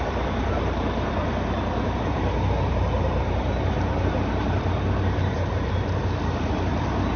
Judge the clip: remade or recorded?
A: remade